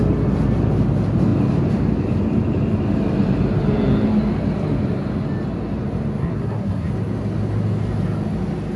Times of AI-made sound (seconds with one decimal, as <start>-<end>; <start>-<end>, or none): 6.2-6.9